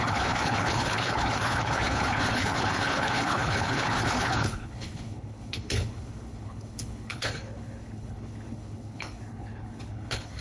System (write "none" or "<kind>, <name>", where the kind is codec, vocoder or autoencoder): codec, HILCodec